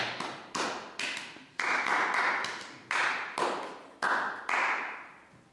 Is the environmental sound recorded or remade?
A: recorded